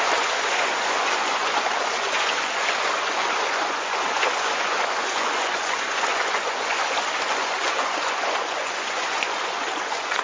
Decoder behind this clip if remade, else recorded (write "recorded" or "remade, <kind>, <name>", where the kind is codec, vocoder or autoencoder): remade, vocoder, Vocos